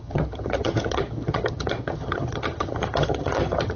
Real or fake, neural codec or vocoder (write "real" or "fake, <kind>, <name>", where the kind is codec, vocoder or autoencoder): fake, vocoder, HiFi-GAN